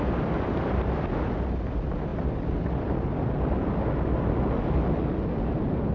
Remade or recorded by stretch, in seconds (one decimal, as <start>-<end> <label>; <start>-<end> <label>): 0.0-5.9 recorded